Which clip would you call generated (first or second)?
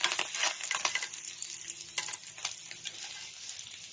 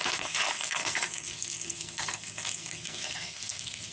second